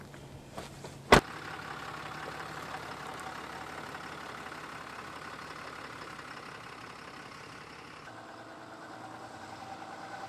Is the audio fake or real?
real